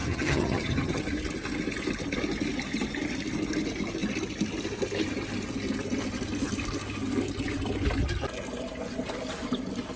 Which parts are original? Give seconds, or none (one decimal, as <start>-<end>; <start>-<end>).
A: 1.0-10.0